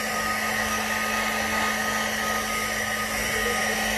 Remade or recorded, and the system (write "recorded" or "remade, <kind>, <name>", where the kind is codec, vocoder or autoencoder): recorded